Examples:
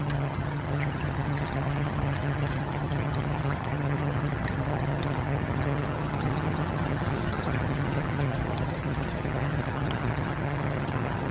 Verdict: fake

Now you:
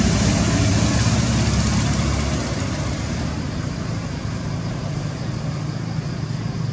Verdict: real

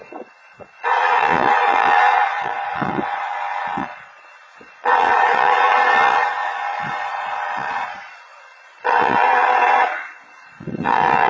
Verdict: fake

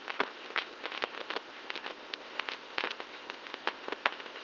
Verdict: fake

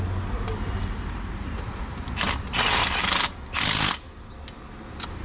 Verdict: real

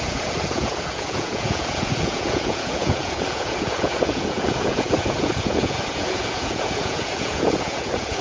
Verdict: fake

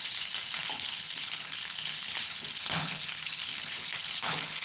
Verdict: fake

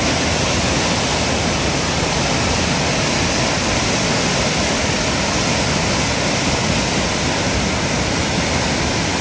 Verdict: real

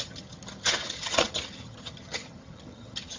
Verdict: fake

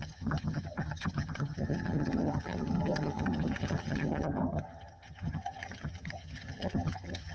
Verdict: fake